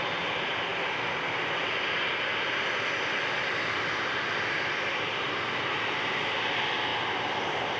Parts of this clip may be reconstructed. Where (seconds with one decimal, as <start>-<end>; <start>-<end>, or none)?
none